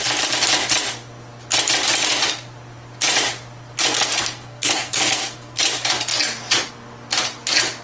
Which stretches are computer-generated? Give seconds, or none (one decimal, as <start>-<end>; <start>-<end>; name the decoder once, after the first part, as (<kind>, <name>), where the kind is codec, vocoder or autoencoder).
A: 3.9-5.6 (codec, SNAC)